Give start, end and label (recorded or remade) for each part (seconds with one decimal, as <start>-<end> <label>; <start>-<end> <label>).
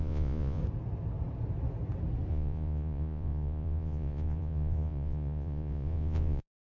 0.0-0.6 remade; 0.6-2.3 recorded; 2.3-6.7 remade